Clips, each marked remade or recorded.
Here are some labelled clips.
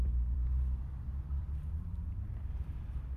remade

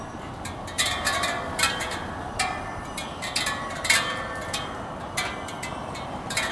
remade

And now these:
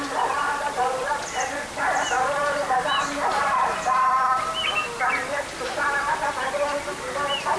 recorded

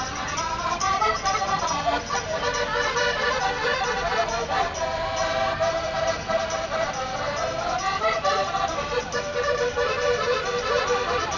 recorded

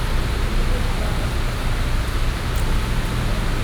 recorded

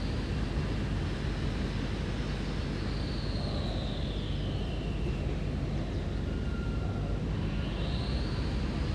recorded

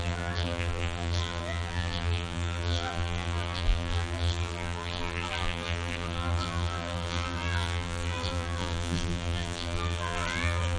remade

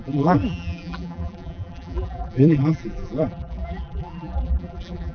remade